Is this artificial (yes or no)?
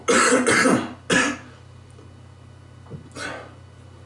no